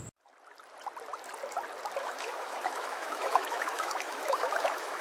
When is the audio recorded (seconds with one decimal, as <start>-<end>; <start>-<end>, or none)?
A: 0.0-2.0